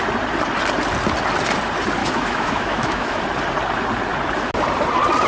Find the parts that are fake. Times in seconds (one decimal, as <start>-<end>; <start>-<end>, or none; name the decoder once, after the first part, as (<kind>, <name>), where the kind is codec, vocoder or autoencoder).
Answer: 2.0-3.2 (autoencoder, DAC-VAE)